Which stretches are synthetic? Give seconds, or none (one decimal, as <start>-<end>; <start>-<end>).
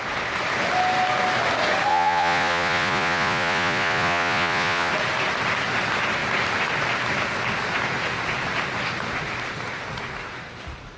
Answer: 1.9-4.9